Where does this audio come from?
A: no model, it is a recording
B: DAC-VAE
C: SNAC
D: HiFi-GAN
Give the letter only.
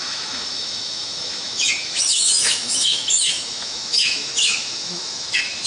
B